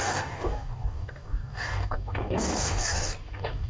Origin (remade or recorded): remade